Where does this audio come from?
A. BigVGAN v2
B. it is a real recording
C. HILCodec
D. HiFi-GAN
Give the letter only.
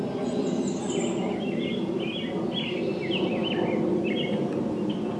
B